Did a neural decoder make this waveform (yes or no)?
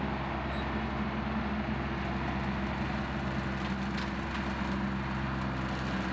no